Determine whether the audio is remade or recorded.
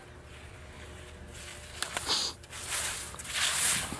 recorded